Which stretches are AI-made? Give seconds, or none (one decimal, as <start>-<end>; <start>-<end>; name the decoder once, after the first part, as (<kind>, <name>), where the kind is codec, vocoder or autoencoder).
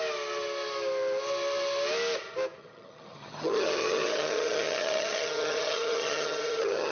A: 2.6-6.9 (vocoder, HiFi-GAN)